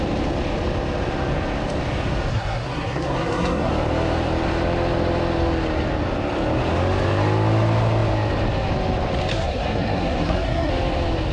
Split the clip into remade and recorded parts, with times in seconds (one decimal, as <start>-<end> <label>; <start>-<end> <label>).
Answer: 0.0-2.3 recorded; 2.3-3.7 remade; 3.7-9.3 recorded; 9.3-10.7 remade; 10.7-11.3 recorded